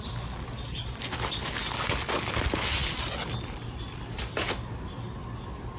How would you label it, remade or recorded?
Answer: recorded